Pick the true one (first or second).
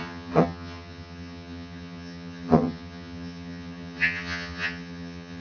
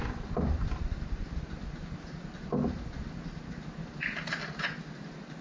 second